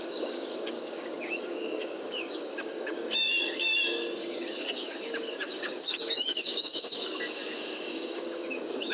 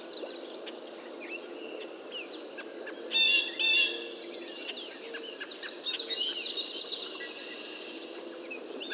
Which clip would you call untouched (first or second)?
second